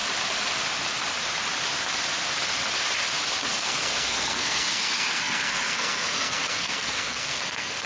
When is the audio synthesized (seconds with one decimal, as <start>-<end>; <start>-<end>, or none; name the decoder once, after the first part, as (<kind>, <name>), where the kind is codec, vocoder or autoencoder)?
3.5-7.9 (codec, SNAC)